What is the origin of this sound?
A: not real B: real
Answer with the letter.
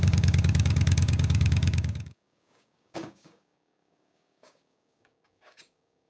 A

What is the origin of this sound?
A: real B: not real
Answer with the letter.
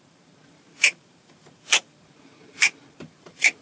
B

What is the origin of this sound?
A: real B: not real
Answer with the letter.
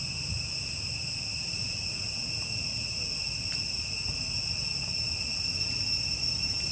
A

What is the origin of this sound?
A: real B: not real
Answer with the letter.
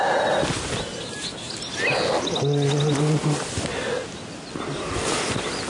A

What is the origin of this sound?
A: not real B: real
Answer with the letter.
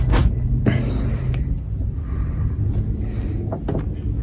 B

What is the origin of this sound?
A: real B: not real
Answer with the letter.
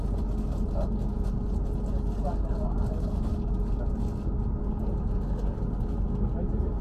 A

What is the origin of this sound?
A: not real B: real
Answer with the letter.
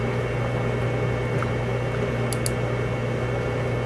B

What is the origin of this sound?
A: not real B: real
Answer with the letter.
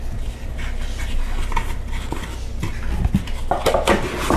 B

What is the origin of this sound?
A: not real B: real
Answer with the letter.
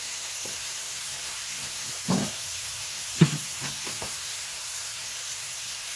A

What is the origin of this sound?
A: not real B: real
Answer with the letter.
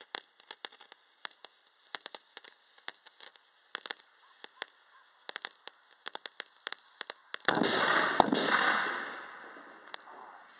B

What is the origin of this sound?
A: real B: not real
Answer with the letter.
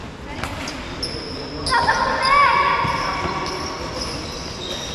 A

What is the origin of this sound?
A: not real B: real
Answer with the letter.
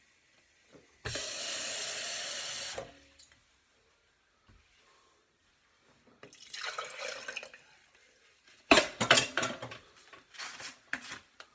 B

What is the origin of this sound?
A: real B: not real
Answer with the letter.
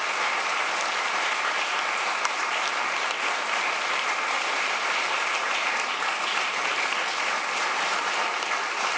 A